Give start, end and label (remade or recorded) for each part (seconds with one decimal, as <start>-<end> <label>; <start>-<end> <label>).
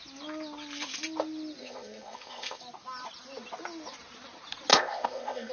0.0-1.6 recorded; 1.6-2.6 remade; 2.6-4.7 recorded; 4.7-5.5 remade